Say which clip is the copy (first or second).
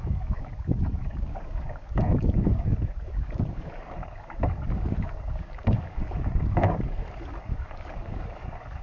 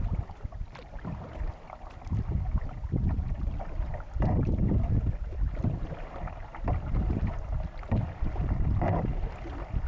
first